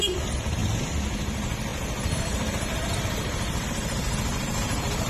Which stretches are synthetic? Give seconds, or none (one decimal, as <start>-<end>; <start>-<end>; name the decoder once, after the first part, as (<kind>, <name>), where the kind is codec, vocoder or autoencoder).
0.0-0.6 (vocoder, BigVGAN v2); 1.2-5.1